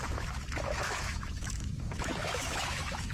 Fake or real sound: fake